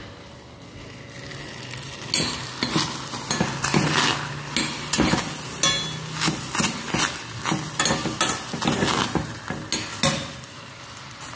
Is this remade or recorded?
recorded